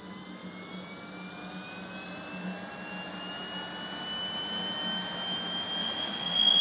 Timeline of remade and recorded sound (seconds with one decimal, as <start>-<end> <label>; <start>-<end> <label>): 0.0-5.8 recorded; 5.8-6.6 remade